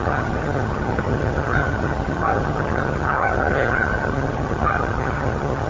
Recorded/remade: remade